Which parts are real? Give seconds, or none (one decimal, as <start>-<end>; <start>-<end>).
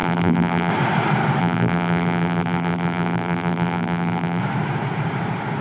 0.7-1.4; 4.4-5.6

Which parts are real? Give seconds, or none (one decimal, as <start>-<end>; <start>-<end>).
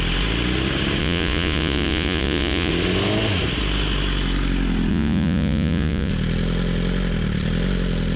0.0-1.0; 2.7-4.9; 6.1-8.2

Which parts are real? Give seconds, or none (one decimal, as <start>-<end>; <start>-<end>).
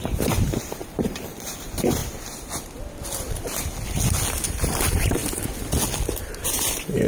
2.0-4.3; 5.2-6.2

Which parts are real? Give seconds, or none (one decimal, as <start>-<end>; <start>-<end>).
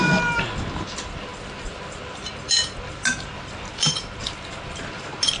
0.0-5.4